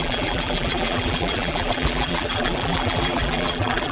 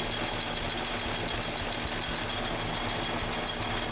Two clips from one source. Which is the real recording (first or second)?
second